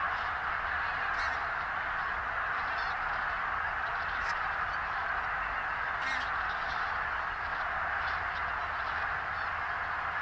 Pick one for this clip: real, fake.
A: real